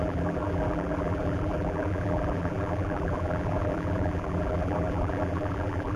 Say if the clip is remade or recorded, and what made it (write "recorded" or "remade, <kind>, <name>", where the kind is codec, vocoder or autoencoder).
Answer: remade, vocoder, BigVGAN v2